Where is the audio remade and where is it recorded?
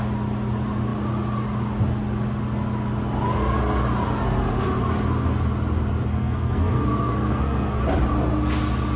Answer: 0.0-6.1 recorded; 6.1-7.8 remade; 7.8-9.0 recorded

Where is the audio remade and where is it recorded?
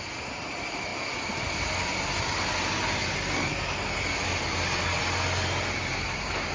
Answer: 0.0-6.5 recorded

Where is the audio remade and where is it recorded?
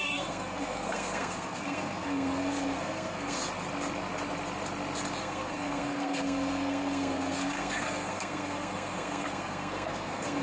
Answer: 0.0-3.4 remade; 3.4-5.2 recorded; 5.2-10.4 remade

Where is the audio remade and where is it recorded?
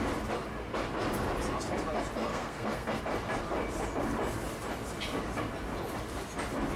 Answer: 0.0-2.3 recorded; 2.3-3.0 remade; 3.0-6.8 recorded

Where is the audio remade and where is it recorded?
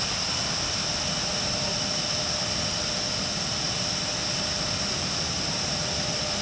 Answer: 0.0-6.4 recorded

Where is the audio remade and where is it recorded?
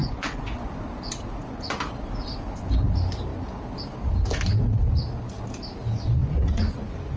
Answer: 0.0-0.8 remade; 0.8-6.2 recorded; 6.2-7.2 remade